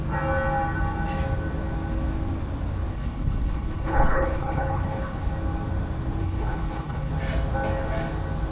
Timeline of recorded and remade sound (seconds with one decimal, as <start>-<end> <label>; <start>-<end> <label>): 0.0-2.9 recorded; 2.9-5.3 remade; 5.3-6.2 recorded; 6.2-7.1 remade; 7.1-8.5 recorded